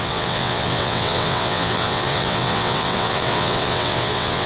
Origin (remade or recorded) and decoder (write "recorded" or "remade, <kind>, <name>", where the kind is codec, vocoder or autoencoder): remade, vocoder, WaveNeXt